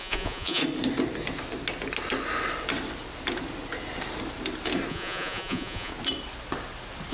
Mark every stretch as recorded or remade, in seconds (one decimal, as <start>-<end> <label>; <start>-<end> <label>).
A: 0.0-0.6 remade; 0.6-4.9 recorded; 4.9-5.9 remade; 5.9-7.1 recorded